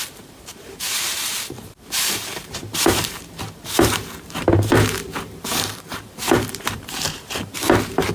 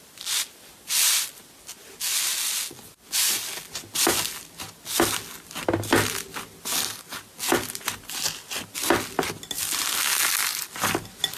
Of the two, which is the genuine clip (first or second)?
second